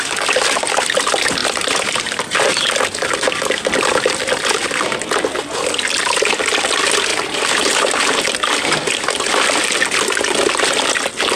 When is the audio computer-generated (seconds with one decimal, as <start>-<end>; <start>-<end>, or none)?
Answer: 1.4-2.7; 7.1-8.2